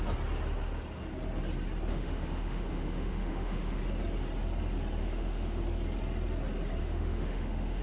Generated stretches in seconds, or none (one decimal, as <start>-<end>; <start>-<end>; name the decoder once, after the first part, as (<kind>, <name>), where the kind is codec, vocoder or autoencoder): 1.9-3.8 (autoencoder, DAC-VAE); 5.0-5.6; 6.8-7.8